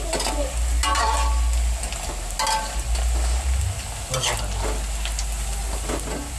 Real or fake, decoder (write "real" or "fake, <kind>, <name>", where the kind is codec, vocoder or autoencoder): real